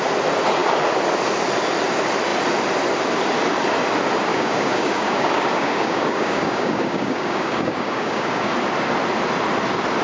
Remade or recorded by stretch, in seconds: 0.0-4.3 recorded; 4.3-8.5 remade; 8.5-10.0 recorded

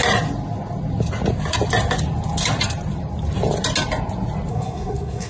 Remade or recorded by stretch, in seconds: 0.0-4.5 recorded; 4.5-5.3 remade

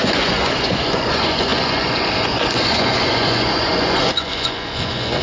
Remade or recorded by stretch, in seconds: 0.0-5.2 remade